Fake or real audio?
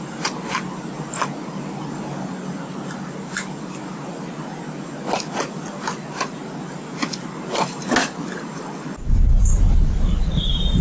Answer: real